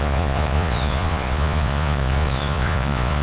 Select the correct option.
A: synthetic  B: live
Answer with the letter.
A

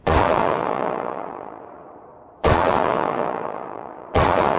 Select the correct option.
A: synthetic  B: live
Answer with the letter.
A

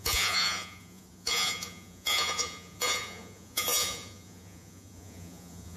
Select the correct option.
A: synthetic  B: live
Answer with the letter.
A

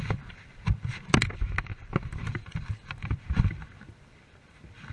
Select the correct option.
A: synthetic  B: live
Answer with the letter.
B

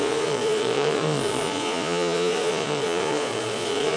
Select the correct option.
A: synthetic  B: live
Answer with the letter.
A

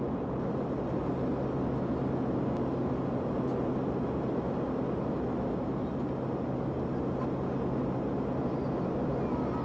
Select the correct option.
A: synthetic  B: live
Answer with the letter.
B